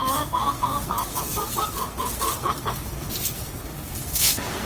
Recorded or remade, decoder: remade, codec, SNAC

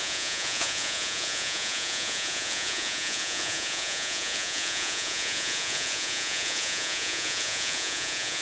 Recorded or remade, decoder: remade, vocoder, Vocos